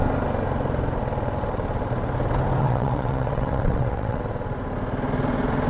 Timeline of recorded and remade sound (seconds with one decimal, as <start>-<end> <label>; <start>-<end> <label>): 0.0-2.6 recorded; 2.6-4.2 remade; 4.2-5.7 recorded